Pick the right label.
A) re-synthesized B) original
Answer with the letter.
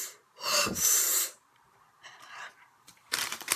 A